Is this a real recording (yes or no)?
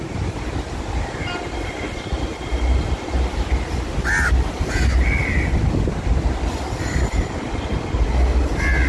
yes